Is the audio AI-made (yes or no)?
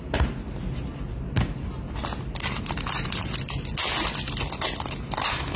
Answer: no